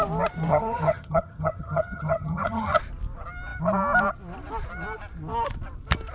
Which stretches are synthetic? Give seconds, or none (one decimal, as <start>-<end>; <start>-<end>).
0.5-2.8